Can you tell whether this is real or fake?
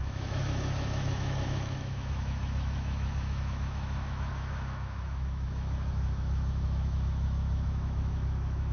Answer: fake